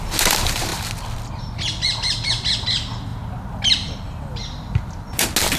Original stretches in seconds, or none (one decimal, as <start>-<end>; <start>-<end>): 0.0-5.6